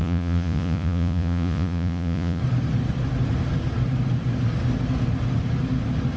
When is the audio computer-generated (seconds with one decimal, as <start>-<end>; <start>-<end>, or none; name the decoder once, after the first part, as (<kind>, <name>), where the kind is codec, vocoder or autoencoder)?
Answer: 0.0-2.4 (vocoder, Vocos)